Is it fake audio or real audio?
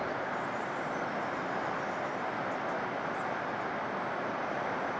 real